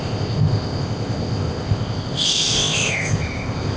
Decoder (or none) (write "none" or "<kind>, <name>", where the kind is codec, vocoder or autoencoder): codec, ZipCodec